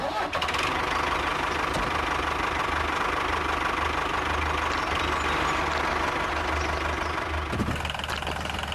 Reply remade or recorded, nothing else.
recorded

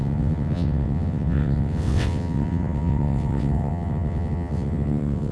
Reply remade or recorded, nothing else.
remade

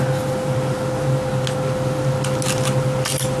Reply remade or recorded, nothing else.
recorded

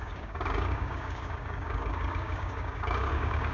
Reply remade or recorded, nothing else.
remade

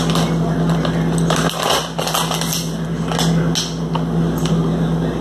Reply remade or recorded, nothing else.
recorded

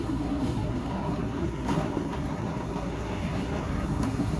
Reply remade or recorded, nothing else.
remade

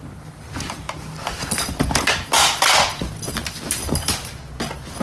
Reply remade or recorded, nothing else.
recorded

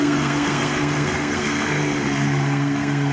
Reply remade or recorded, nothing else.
remade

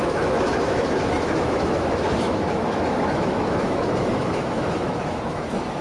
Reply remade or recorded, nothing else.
remade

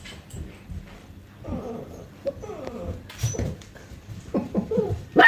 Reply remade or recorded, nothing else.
remade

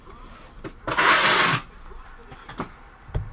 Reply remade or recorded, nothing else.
recorded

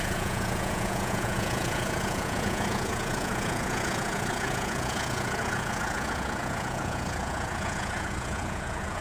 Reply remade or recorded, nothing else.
remade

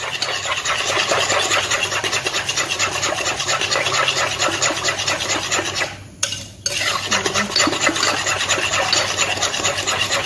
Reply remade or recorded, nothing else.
recorded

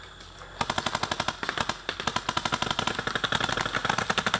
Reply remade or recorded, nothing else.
recorded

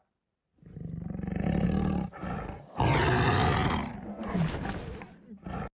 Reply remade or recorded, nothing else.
recorded